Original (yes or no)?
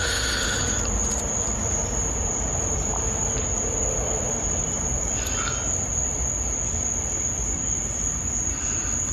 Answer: yes